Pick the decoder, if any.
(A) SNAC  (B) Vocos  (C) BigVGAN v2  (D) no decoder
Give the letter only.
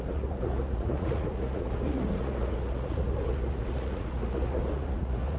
B